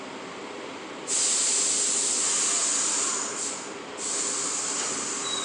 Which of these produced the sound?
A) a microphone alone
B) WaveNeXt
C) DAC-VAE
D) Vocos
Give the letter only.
A